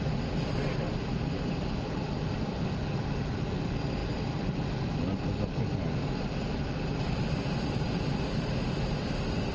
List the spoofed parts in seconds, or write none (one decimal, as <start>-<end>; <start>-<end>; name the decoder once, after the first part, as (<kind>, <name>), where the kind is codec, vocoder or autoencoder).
none